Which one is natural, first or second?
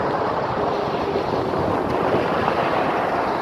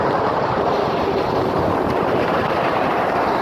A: first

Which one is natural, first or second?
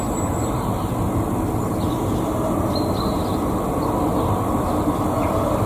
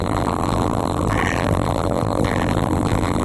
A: first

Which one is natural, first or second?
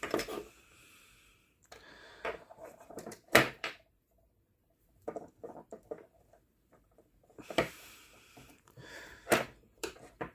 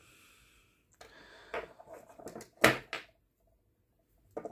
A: second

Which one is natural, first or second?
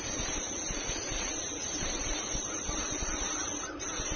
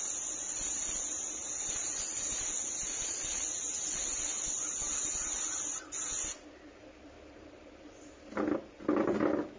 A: second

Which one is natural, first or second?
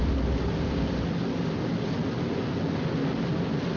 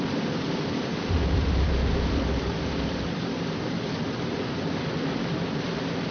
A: first